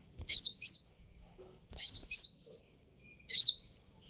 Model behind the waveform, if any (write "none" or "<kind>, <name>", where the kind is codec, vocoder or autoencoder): codec, DAC